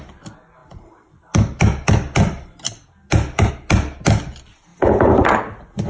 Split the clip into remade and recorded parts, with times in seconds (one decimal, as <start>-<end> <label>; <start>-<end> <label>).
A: 0.0-5.9 recorded